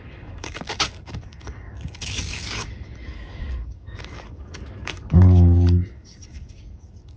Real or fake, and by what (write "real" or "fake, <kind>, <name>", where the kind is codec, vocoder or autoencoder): fake, codec, DAC